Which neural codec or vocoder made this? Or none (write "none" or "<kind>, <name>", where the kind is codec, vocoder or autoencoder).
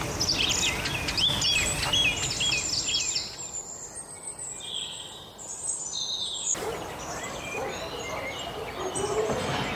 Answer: none